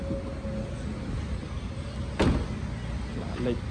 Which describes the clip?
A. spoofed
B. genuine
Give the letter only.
B